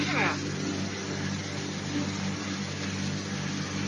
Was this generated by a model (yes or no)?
no